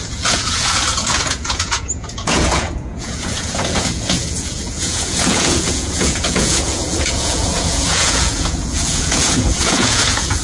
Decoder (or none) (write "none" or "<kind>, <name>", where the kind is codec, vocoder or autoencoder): vocoder, Vocos